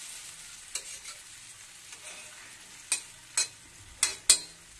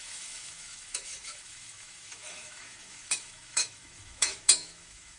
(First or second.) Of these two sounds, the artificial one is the second